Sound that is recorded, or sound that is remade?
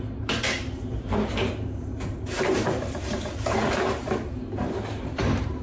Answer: remade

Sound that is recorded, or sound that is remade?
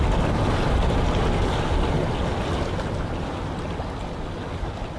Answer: recorded